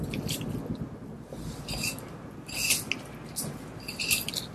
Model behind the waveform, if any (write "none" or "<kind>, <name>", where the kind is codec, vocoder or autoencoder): none